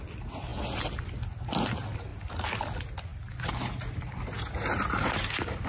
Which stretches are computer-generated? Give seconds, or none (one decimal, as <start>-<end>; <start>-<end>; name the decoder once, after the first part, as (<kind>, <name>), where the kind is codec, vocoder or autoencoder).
none